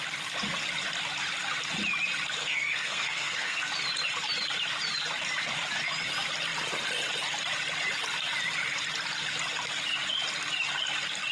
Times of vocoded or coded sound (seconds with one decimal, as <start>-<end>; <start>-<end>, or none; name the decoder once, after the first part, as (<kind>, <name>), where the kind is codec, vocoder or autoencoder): 2.4-3.7 (codec, SNAC)

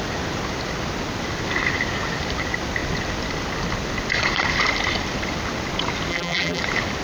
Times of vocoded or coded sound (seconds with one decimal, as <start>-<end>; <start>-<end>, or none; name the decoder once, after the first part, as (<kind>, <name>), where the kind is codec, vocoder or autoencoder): 6.1-6.6 (vocoder, BigVGAN v2)

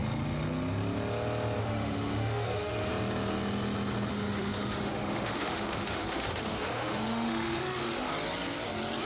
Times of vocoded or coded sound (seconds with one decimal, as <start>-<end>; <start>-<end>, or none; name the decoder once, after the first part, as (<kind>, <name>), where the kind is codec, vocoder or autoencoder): 1.6-2.9 (autoencoder, DAC-VAE); 4.1-8.1

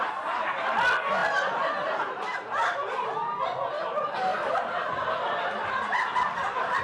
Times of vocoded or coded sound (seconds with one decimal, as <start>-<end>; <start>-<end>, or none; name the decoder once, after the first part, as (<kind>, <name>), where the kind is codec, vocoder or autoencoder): none

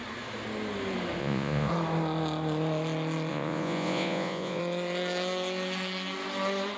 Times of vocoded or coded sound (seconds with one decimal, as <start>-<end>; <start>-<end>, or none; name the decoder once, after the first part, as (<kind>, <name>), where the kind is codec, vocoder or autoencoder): 1.2-1.7 (vocoder, Vocos); 3.3-4.6